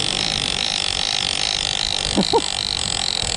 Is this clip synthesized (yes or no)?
no